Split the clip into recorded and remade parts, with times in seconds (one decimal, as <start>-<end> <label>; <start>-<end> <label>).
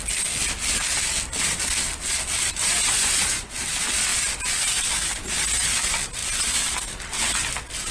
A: 0.0-2.6 recorded; 2.6-3.5 remade; 3.5-7.9 recorded